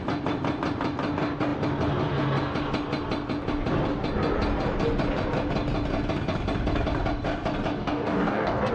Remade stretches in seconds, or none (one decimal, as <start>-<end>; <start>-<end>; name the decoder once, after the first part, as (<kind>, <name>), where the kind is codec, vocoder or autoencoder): 7.8-8.7 (codec, DAC)